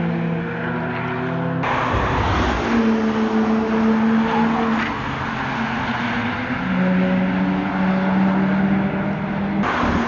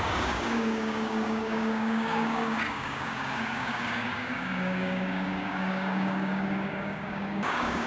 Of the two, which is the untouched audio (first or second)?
first